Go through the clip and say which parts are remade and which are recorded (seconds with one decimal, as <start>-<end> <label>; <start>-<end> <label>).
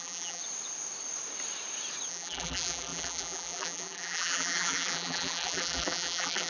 0.0-0.4 remade; 0.4-2.1 recorded; 2.1-6.5 remade